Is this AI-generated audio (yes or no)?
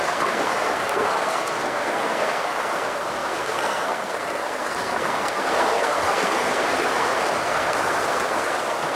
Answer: yes